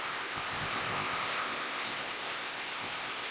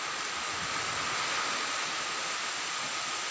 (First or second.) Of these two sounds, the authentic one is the second